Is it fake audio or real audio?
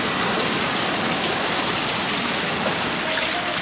real